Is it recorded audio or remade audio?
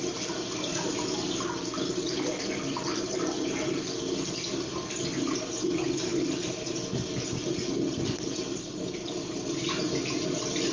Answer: recorded